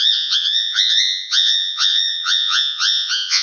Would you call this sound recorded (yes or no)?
no